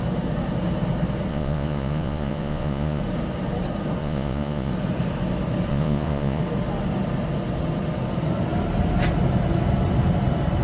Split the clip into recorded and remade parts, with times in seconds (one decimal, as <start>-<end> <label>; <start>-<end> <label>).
0.0-1.3 recorded; 1.3-3.0 remade; 3.0-4.0 recorded; 4.0-4.7 remade; 4.7-5.7 recorded; 5.7-6.4 remade; 6.4-10.6 recorded